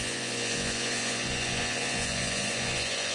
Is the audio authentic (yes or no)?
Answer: no